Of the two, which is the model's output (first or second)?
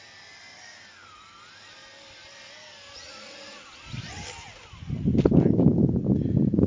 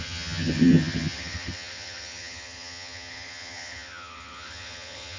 second